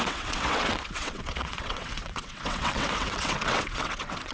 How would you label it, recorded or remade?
remade